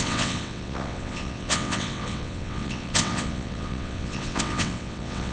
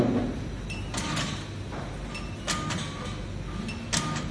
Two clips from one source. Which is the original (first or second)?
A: second